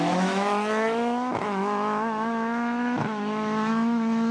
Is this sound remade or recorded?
remade